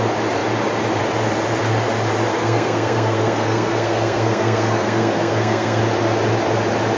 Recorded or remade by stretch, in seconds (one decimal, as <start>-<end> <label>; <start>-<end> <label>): 0.0-2.3 recorded; 2.3-5.8 remade; 5.8-7.0 recorded